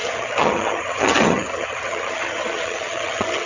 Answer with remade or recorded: remade